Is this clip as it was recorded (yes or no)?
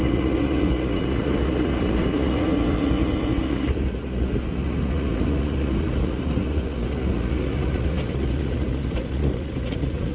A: no